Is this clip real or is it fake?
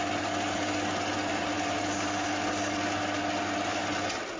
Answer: real